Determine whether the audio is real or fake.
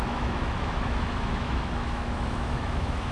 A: fake